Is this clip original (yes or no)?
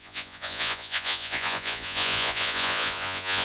no